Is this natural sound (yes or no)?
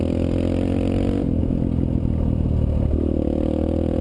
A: yes